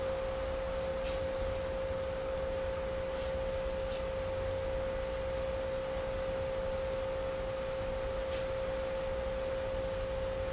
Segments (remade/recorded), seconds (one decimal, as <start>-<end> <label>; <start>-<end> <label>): 0.0-10.5 recorded